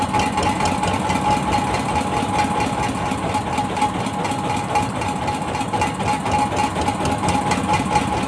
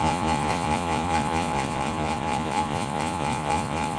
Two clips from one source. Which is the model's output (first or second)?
second